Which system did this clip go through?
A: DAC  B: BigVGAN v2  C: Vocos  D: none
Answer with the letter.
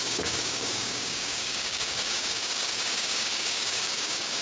A